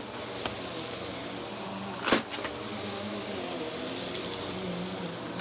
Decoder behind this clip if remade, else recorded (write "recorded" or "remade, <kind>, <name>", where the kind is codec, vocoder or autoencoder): recorded